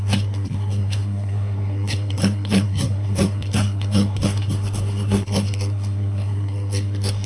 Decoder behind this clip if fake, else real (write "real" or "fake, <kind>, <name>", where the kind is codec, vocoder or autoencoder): fake, codec, SNAC